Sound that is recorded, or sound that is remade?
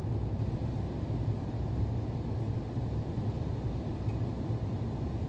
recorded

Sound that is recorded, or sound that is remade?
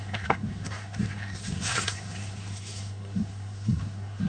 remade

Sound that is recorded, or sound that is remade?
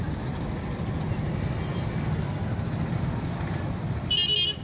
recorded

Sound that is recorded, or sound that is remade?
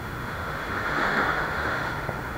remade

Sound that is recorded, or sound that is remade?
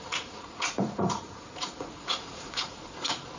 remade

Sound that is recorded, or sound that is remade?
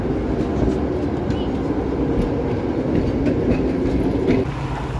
recorded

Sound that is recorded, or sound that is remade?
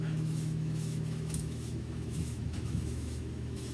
remade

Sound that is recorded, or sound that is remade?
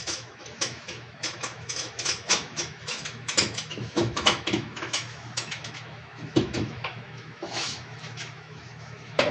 remade